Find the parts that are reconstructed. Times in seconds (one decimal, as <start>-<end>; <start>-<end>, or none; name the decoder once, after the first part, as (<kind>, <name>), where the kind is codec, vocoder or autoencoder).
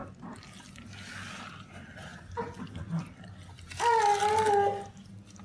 none